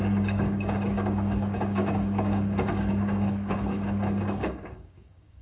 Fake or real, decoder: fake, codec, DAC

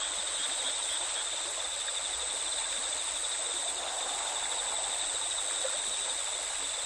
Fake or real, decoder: real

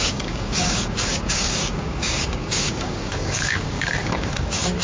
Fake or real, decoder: fake, codec, DAC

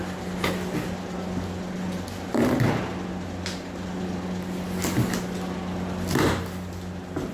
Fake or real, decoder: real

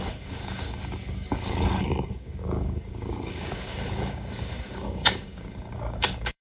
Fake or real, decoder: fake, codec, DAC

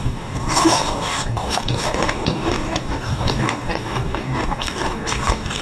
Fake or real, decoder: fake, codec, DAC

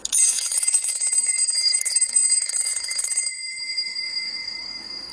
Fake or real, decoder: fake, codec, DAC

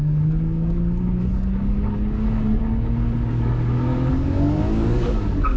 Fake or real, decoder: fake, codec, DAC